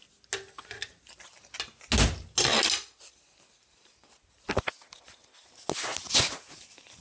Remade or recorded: recorded